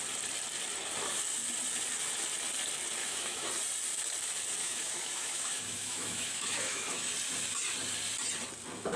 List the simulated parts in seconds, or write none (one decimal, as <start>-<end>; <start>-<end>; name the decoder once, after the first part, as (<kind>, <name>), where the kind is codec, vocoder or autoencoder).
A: 3.0-3.5 (autoencoder, DAC-VAE); 4.6-7.1

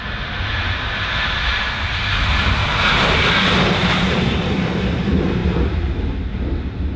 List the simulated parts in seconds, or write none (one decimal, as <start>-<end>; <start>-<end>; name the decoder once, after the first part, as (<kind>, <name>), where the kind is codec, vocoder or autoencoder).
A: 2.6-4.6 (vocoder, BigVGAN v2); 5.4-6.4

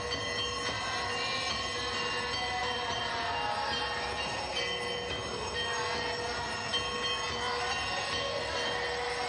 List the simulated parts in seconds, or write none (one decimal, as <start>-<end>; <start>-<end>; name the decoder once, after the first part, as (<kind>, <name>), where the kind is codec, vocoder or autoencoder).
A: 2.6-3.1 (vocoder, BigVGAN v2)

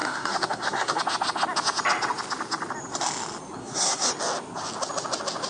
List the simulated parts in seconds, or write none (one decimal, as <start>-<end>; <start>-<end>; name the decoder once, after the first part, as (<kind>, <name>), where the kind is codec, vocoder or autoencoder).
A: 0.0-1.0 (codec, SNAC); 3.6-4.1

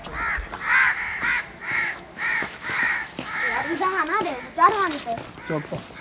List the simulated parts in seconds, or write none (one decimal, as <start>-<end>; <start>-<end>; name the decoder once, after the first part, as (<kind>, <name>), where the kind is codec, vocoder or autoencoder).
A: 0.8-4.4 (autoencoder, DAC-VAE)

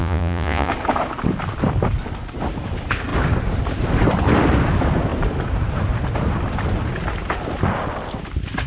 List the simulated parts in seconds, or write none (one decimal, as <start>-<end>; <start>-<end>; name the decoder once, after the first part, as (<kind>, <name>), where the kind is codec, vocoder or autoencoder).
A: 0.0-0.7 (vocoder, Vocos)

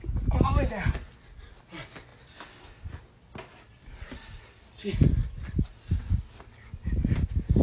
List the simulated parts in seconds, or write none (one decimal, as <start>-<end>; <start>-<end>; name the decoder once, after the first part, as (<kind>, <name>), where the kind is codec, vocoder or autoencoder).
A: none

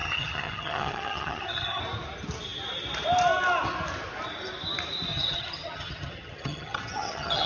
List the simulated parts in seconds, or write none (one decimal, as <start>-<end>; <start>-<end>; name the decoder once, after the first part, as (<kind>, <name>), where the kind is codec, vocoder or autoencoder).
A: 0.0-1.8 (vocoder, HiFi-GAN); 5.1-7.5